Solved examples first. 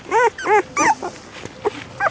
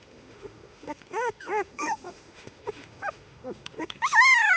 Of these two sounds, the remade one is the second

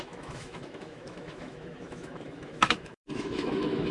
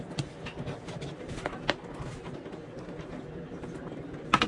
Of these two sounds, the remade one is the first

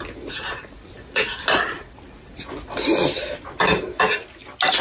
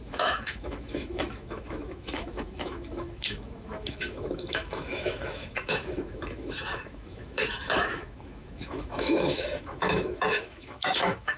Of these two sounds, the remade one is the second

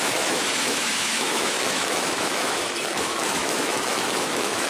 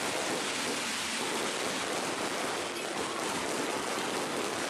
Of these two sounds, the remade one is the first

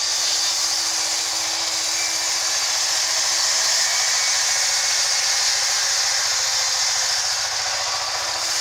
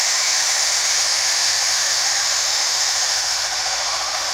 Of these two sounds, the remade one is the second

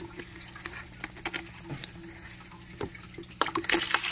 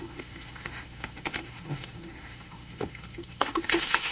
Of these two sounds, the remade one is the second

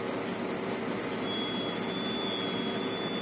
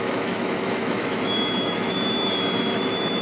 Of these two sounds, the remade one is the second